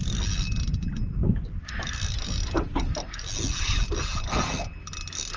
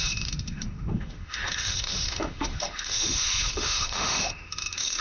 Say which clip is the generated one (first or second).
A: second